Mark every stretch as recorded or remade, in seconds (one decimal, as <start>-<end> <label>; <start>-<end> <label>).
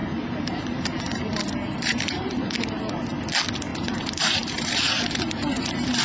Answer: 0.0-2.8 remade; 2.8-3.7 recorded; 3.7-6.0 remade